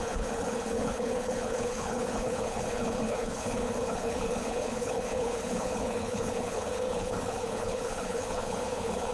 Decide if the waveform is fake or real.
fake